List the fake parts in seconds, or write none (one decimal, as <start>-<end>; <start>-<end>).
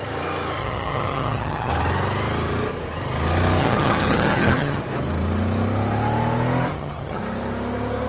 0.6-1.7; 3.6-4.8; 6.7-7.2